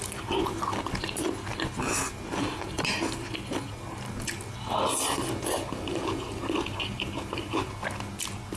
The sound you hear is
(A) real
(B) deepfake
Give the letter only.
A